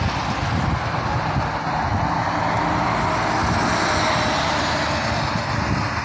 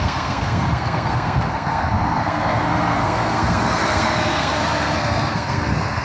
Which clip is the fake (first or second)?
second